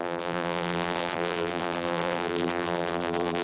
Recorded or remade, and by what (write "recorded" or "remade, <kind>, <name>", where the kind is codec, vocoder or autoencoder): remade, vocoder, BigVGAN v2